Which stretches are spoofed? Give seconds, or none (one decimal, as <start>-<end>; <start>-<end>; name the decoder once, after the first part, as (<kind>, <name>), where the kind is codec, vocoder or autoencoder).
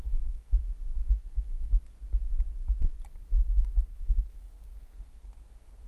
0.0-0.6 (codec, SNAC); 1.1-1.7; 3.9-5.9